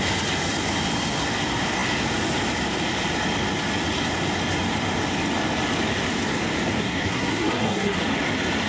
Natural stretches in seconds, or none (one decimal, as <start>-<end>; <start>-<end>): 0.0-6.8; 8.0-8.7